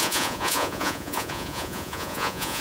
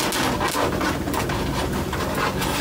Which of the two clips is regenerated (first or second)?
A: first